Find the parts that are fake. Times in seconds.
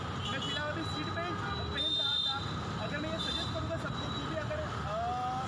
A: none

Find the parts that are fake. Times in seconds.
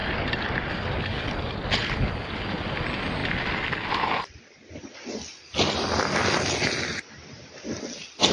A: none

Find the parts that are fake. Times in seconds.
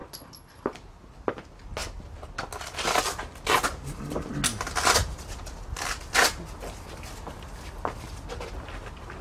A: none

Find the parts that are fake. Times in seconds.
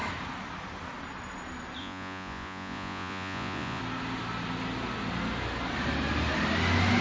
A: 1.8-3.8 (vocoder, Vocos)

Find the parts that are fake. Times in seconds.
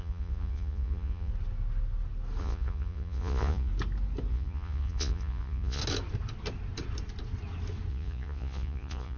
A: 0.0-1.3 (vocoder, Vocos); 2.4-3.7; 4.3-5.8; 7.9-9.2